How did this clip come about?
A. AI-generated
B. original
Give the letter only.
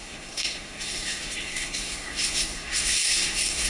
A